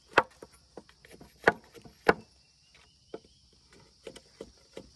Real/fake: real